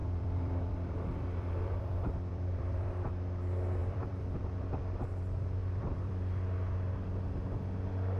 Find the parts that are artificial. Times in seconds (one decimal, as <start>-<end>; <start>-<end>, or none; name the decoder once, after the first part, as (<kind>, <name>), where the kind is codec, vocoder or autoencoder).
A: 0.0-3.1 (vocoder, BigVGAN v2); 3.8-4.8; 5.6-6.1